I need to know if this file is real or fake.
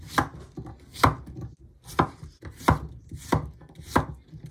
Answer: real